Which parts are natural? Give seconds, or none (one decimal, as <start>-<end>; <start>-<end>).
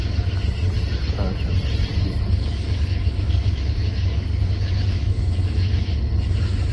0.0-0.9; 1.4-1.9; 5.9-6.7